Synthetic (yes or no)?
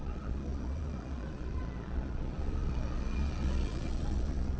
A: yes